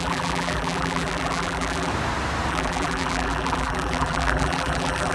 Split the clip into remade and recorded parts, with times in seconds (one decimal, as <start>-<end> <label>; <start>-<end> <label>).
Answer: 0.0-1.9 remade; 1.9-2.5 recorded; 2.5-5.1 remade